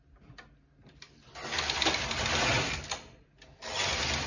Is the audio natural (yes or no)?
yes